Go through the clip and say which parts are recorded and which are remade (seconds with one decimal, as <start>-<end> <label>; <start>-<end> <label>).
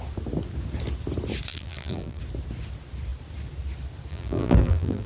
0.0-1.5 recorded; 1.5-2.2 remade; 2.2-4.1 recorded; 4.1-5.1 remade